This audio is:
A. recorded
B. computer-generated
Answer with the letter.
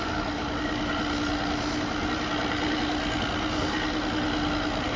A